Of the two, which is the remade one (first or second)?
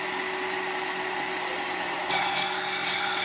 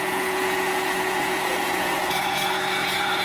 second